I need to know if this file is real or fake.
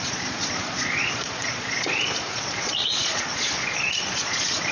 fake